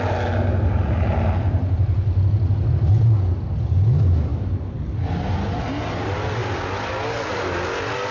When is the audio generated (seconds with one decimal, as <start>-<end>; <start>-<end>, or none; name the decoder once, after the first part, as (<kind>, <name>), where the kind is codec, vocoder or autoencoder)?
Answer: none

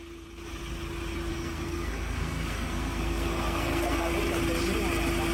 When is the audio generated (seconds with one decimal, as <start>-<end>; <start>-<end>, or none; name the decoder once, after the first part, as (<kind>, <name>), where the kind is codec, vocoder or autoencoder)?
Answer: 1.3-4.1 (codec, SNAC)

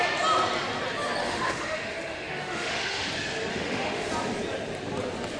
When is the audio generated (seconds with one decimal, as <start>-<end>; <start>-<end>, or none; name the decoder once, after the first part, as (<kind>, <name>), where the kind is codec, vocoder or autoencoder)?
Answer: 1.2-3.1 (autoencoder, DAC-VAE); 3.5-4.1

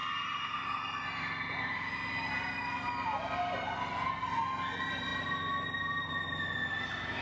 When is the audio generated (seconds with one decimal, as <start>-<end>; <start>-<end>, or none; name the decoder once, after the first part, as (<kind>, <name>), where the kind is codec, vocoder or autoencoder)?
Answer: none

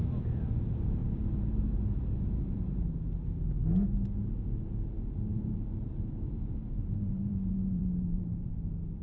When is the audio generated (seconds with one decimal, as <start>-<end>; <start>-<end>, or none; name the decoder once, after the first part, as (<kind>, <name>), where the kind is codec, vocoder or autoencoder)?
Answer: 1.0-3.0 (vocoder, BigVGAN v2); 5.3-8.5

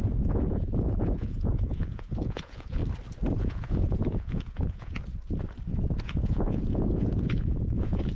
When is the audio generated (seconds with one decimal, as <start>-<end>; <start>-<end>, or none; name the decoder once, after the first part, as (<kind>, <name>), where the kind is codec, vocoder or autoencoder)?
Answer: 0.0-2.8 (vocoder, Vocos); 3.4-5.0; 6.0-8.2

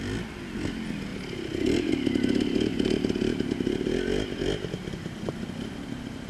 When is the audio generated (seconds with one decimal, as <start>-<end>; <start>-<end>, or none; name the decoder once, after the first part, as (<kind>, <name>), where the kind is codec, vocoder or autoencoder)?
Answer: none

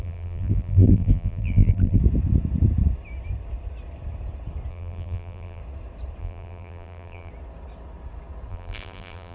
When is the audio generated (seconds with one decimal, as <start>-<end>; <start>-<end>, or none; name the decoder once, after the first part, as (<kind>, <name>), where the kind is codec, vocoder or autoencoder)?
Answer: 0.0-2.0 (vocoder, BigVGAN v2); 4.7-5.6; 6.2-7.3; 8.5-9.3